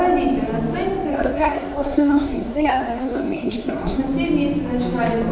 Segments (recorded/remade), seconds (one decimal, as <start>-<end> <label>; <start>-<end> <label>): 0.0-1.1 recorded; 1.1-4.0 remade; 4.0-5.3 recorded